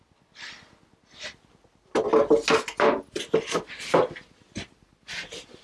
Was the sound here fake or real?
real